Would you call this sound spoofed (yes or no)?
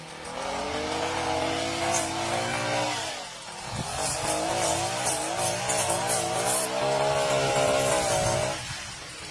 no